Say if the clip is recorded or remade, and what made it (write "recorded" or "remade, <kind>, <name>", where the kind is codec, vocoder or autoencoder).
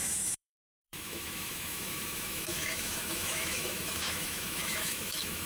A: remade, autoencoder, DAC-VAE